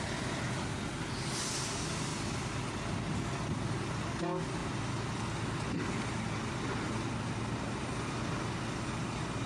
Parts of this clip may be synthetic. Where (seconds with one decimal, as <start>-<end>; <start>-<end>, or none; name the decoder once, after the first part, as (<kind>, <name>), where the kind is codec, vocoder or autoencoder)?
none